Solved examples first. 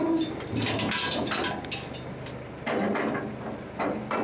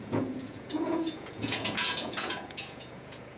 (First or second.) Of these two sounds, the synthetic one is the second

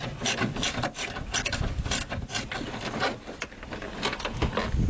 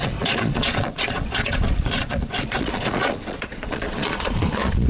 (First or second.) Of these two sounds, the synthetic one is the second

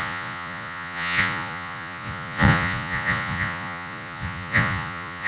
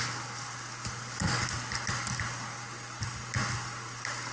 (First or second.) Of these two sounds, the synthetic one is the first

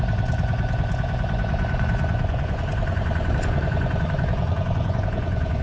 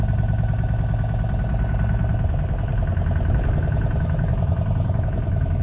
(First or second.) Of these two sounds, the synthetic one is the first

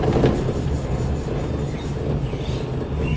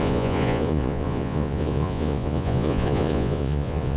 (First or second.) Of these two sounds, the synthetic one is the second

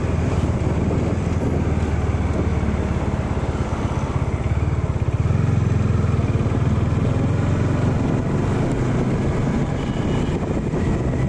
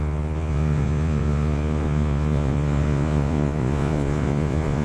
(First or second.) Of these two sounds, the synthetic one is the second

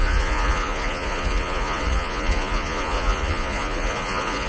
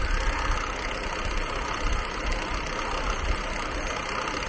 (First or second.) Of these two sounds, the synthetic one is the first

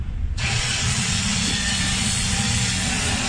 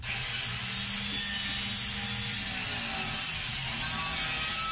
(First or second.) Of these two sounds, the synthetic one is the first